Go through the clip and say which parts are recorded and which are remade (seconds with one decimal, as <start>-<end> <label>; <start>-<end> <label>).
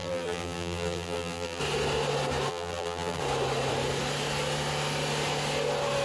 0.0-1.6 remade; 1.6-2.5 recorded; 2.5-3.2 remade; 3.2-6.0 recorded